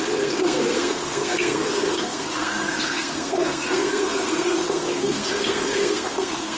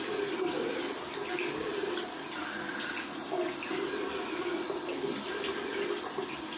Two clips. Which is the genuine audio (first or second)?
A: second